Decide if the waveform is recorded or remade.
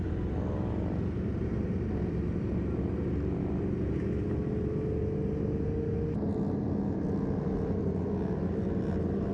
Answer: recorded